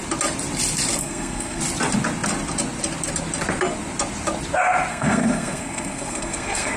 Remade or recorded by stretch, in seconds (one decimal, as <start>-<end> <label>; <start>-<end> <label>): 0.0-1.0 recorded; 1.0-1.6 remade; 1.6-4.9 recorded; 4.9-6.8 remade